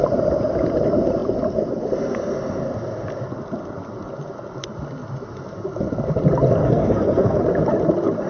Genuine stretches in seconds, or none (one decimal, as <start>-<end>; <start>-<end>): 0.0-6.6; 7.4-8.3